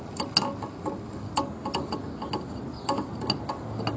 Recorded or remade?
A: recorded